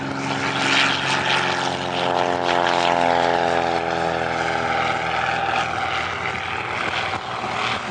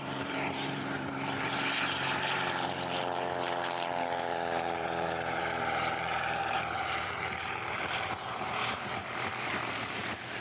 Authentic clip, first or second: first